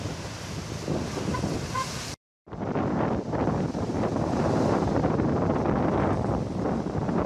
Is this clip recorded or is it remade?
remade